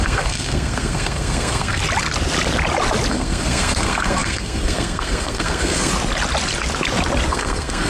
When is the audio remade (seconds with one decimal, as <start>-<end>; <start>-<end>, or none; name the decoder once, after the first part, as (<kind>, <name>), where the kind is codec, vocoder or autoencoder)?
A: 0.0-1.8 (codec, SNAC); 3.1-5.9; 7.3-7.9